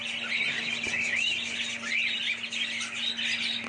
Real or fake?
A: real